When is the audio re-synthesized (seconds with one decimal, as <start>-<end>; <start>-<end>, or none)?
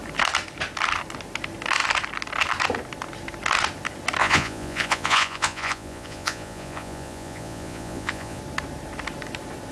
4.2-8.4